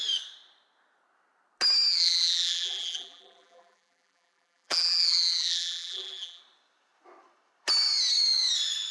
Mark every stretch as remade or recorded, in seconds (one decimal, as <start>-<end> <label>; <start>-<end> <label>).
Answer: 0.0-1.9 recorded; 1.9-6.4 remade; 6.4-8.9 recorded